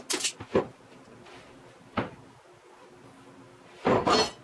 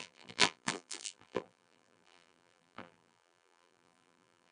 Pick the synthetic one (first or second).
second